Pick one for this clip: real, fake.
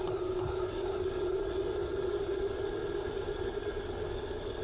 real